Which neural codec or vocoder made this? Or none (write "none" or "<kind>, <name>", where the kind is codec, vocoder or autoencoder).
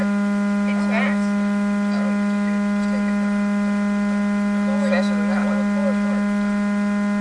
none